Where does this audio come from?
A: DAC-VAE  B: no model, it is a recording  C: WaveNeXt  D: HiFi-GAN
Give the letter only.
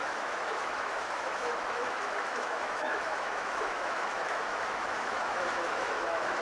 A